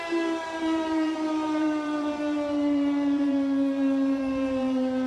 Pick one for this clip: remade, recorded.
remade